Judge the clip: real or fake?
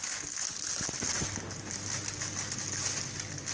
real